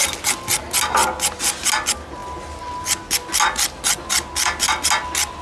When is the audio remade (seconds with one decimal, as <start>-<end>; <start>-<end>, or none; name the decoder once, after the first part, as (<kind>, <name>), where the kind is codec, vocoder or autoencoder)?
none

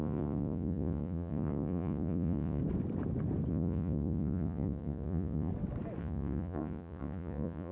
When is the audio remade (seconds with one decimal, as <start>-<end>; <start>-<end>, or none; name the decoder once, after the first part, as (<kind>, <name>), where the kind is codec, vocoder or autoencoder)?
0.0-2.6 (vocoder, Vocos); 3.5-5.5; 6.0-7.7